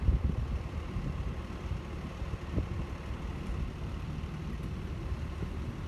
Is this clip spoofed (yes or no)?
no